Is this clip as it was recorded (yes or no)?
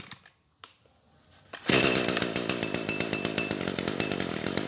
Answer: yes